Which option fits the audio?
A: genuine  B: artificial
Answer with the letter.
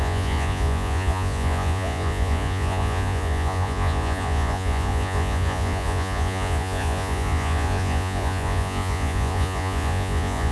B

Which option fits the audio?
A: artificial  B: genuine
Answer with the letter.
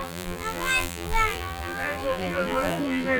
A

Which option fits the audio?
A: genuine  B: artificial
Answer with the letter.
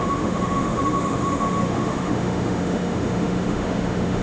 B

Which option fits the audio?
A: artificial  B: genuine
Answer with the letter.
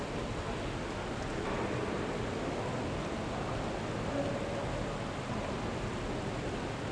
B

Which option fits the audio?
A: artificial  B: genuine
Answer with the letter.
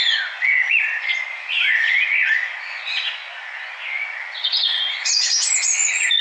A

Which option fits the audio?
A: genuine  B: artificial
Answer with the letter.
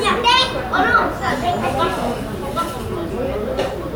A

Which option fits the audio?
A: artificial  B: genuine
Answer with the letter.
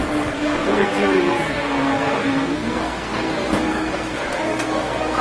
A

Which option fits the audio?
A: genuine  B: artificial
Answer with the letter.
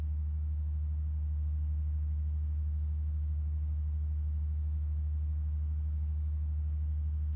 A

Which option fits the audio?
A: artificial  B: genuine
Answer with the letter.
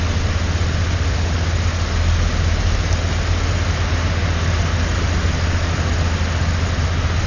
B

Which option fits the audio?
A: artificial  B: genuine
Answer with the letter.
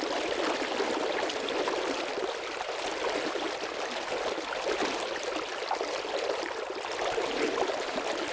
B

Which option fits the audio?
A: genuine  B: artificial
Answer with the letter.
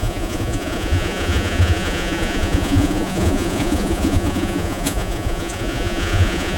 B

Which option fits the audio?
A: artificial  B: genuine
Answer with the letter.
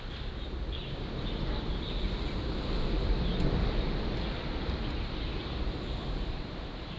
B